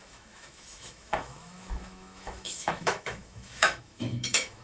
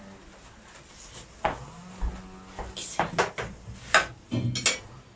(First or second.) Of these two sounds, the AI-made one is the first